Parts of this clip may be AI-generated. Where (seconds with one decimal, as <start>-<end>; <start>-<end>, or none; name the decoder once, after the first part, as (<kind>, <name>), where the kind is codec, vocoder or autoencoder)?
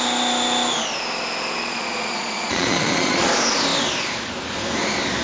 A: 1.6-3.3 (vocoder, Vocos)